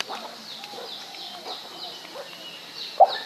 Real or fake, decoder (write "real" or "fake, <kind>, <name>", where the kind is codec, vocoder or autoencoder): real